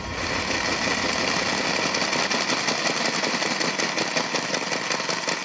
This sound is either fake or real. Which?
real